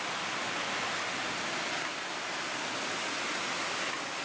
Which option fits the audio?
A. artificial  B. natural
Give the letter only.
B